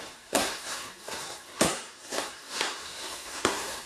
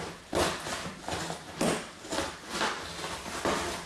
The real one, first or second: second